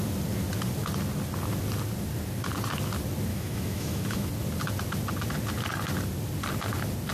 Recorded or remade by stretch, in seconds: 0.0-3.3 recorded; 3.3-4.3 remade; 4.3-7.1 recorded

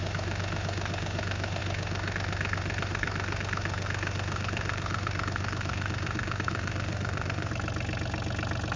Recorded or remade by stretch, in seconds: 0.0-7.5 remade; 7.5-8.8 recorded

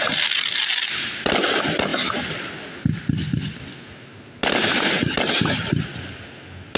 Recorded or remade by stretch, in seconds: 0.0-6.8 recorded

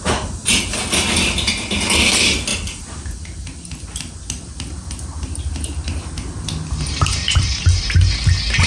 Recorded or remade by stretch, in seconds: 0.0-8.7 recorded

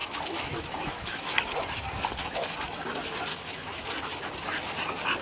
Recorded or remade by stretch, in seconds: 0.0-1.2 remade; 1.2-2.2 recorded; 2.2-2.9 remade; 2.9-3.3 recorded; 3.3-3.9 remade; 3.9-5.2 recorded

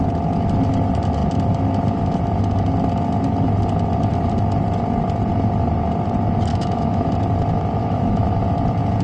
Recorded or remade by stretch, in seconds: 0.0-6.5 recorded; 6.5-7.1 remade; 7.1-7.8 recorded; 7.8-8.4 remade; 8.4-9.0 recorded